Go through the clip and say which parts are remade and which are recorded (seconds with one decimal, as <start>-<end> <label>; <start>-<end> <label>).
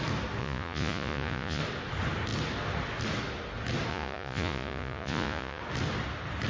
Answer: 0.0-0.4 recorded; 0.4-1.6 remade; 1.6-3.9 recorded; 3.9-5.6 remade; 5.6-6.5 recorded